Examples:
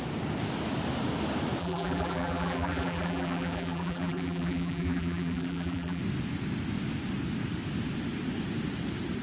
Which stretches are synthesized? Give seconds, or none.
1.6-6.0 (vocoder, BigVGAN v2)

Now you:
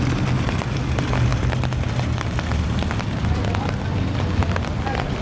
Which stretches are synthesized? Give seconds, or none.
0.0-1.3 (vocoder, BigVGAN v2); 1.9-2.5; 4.4-5.2

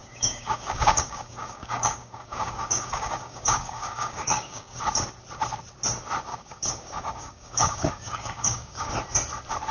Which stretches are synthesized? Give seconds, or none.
0.0-4.8 (codec, DAC); 6.3-8.9

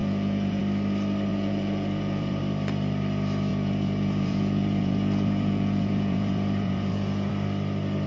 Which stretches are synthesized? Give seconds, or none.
0.0-0.6 (vocoder, Vocos); 1.3-2.4; 3.5-7.3

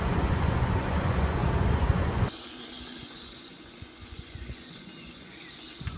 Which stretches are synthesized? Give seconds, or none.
0.0-6.0 (vocoder, Vocos)